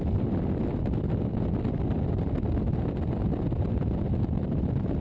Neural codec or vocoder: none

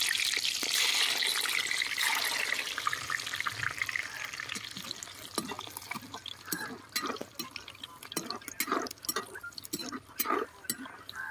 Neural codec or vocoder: none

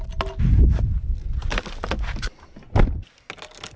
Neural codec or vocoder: none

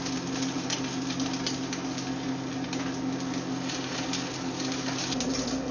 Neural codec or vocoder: none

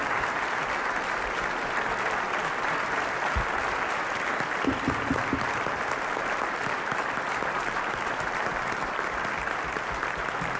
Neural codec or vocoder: none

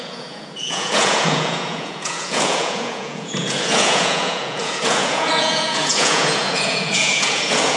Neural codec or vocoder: vocoder, Vocos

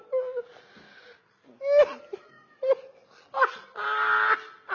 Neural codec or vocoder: none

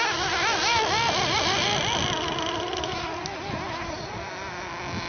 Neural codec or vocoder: none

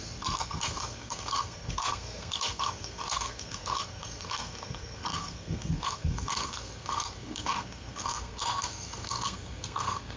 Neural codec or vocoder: codec, SNAC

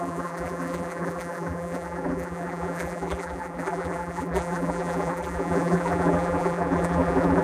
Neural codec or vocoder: vocoder, BigVGAN v2